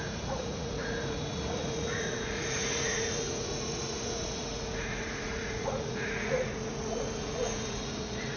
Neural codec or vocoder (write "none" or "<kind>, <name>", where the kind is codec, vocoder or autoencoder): vocoder, Vocos